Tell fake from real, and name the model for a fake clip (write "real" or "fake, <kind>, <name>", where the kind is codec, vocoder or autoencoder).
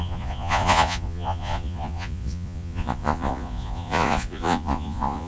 fake, vocoder, Vocos